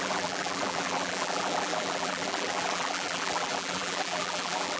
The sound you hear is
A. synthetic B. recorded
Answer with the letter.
A